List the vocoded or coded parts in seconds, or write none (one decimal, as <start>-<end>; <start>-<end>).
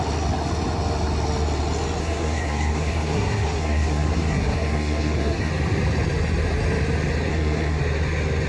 2.0-5.5; 7.3-7.8